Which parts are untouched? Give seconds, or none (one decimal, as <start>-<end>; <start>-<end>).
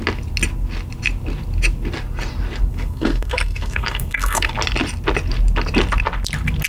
0.0-2.7; 4.5-6.7